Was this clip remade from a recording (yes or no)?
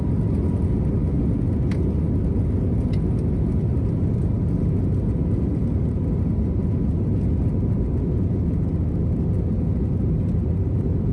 no